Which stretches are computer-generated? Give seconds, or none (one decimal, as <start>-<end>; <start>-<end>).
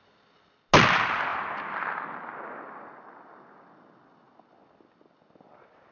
none